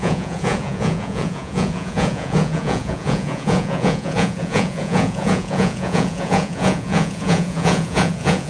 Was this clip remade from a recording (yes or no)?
yes